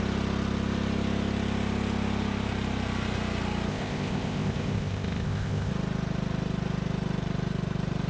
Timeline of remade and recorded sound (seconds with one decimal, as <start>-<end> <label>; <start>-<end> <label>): 0.0-3.7 recorded; 3.7-5.7 remade; 5.7-8.1 recorded